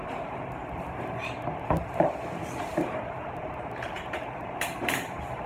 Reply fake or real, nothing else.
fake